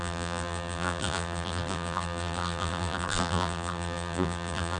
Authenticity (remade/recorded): remade